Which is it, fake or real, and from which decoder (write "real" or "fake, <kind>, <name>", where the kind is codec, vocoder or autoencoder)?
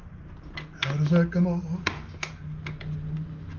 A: real